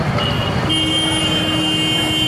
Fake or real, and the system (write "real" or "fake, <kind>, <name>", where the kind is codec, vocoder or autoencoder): real